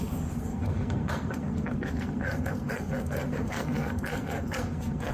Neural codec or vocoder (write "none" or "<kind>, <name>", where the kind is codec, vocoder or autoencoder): codec, SNAC